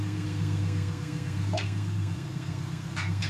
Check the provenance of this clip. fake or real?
fake